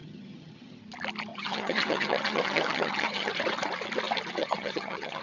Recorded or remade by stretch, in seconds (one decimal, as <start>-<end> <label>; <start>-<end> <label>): 0.0-0.8 remade; 0.8-1.3 recorded; 1.3-3.3 remade; 3.3-4.4 recorded; 4.4-5.2 remade

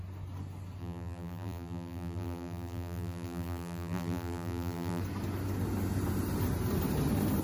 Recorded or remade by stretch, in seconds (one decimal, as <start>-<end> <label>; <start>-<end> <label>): 0.0-0.8 recorded; 0.8-5.0 remade; 5.0-7.4 recorded

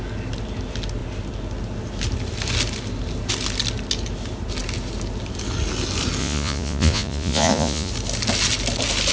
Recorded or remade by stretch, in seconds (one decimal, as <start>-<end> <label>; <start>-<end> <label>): 0.0-6.2 recorded; 6.2-7.9 remade; 7.9-9.1 recorded

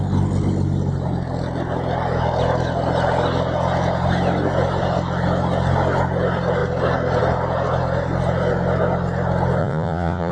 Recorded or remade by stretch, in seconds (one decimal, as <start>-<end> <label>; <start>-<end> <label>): 0.0-9.6 recorded; 9.6-10.3 remade

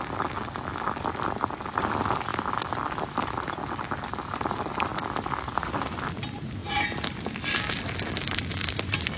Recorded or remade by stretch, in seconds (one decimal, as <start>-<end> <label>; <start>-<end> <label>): 0.0-9.2 recorded

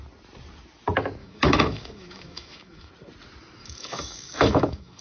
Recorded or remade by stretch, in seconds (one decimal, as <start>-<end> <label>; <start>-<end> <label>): 0.0-1.2 recorded; 1.2-2.9 remade; 2.9-3.6 recorded; 3.6-5.0 remade

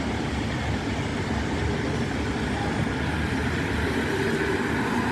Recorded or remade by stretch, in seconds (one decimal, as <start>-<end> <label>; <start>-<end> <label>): 0.0-1.1 remade; 1.1-2.3 recorded; 2.3-3.4 remade; 3.4-4.5 recorded; 4.5-5.1 remade